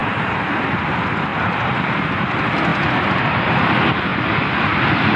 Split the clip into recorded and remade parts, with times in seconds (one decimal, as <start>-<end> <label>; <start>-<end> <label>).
0.0-1.3 recorded; 1.3-2.0 remade; 2.0-2.7 recorded; 2.7-3.5 remade; 3.5-5.2 recorded